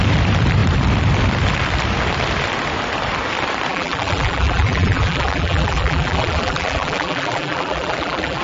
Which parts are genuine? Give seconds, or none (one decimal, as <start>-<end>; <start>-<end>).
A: 0.0-3.7